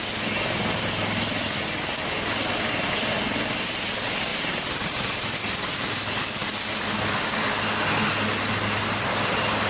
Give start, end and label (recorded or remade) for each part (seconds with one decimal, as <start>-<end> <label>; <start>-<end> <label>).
0.0-4.3 recorded; 4.3-5.4 remade; 5.4-9.7 recorded